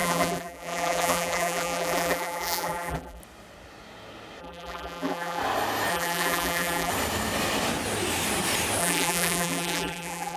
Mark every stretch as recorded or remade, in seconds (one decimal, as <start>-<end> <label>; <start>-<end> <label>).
0.0-3.2 remade; 3.2-4.4 recorded; 4.4-5.4 remade; 5.4-5.9 recorded; 5.9-6.9 remade; 6.9-8.8 recorded; 8.8-10.4 remade